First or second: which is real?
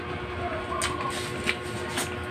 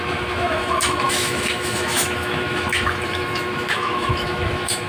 first